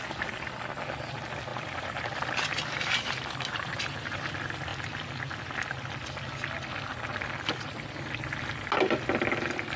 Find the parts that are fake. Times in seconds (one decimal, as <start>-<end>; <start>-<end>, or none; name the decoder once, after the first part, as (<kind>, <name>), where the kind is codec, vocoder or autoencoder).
1.5-4.3 (vocoder, BigVGAN v2)